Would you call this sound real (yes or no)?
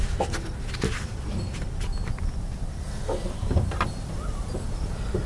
yes